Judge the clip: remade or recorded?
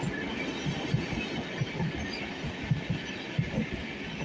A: recorded